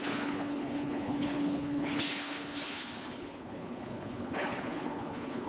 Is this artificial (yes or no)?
yes